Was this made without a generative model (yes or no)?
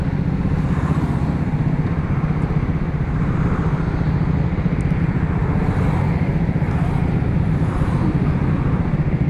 yes